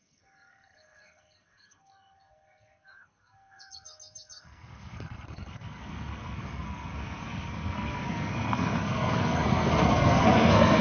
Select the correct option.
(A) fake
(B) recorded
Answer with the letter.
A